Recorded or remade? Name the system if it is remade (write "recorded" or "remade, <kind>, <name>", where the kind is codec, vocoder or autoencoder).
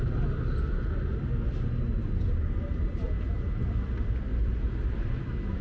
recorded